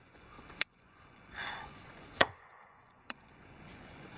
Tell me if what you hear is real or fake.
fake